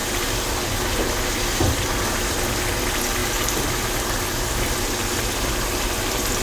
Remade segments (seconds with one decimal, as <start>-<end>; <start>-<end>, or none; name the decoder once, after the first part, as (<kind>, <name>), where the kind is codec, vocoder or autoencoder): 0.0-1.9 (vocoder, BigVGAN v2)